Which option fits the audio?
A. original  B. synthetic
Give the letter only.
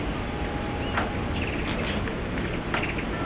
A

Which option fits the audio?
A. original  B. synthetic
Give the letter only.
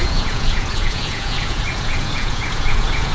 B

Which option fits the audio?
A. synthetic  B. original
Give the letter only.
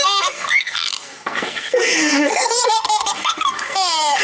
A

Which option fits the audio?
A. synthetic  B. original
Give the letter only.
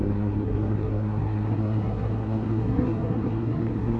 A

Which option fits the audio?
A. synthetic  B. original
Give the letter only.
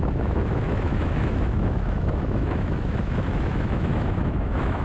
A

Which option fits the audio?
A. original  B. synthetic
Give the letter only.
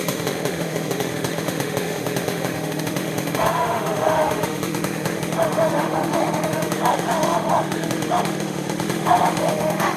B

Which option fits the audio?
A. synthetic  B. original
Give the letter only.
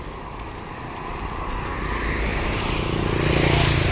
B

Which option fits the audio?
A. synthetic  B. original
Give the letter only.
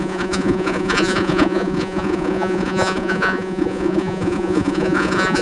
A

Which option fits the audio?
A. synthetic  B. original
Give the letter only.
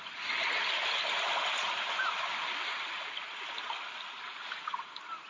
B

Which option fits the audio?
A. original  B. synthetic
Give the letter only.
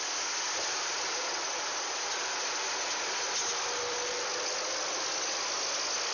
A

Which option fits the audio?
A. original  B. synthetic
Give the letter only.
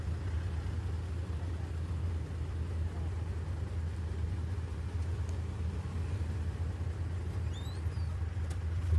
A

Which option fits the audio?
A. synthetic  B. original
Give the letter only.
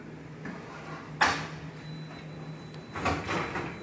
B